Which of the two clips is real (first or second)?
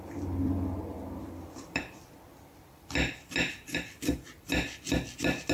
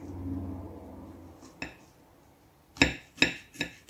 second